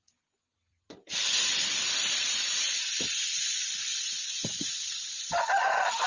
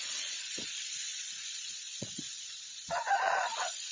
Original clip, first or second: first